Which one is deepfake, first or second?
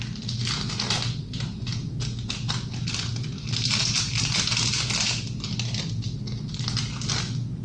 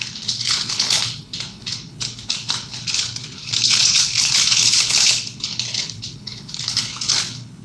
second